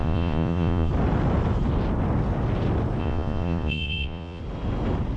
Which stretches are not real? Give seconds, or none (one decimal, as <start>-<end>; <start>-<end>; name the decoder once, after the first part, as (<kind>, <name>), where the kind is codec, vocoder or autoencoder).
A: 0.0-0.9 (vocoder, Vocos); 3.0-4.4